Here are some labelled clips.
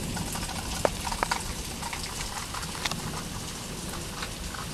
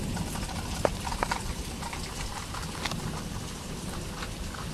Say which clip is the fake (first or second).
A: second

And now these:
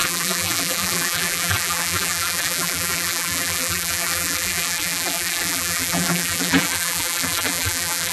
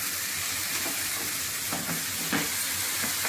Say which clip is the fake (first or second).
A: first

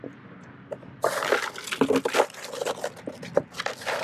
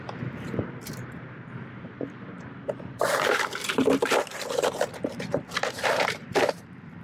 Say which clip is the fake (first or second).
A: second